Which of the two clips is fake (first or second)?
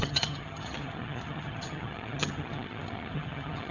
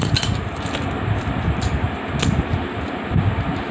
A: first